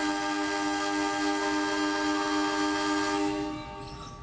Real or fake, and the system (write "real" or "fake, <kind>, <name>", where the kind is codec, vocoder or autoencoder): real